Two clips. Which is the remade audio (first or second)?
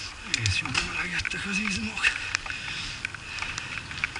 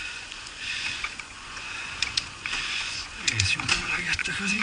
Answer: second